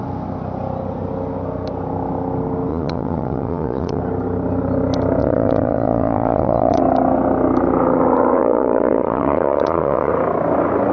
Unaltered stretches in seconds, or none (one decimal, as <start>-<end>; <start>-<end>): 0.0-2.7; 4.0-5.2; 6.8-8.4; 10.1-10.9